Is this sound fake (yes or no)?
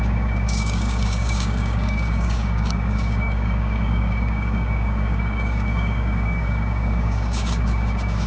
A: yes